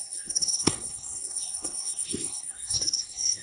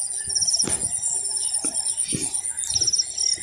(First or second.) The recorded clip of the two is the second